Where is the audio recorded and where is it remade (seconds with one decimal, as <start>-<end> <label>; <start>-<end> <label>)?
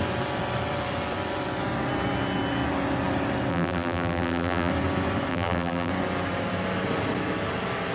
0.0-3.5 recorded; 3.5-4.7 remade; 4.7-5.3 recorded; 5.3-5.9 remade; 5.9-7.9 recorded